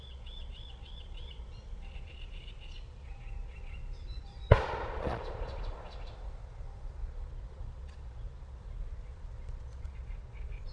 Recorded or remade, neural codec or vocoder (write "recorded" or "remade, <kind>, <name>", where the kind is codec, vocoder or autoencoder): remade, vocoder, Vocos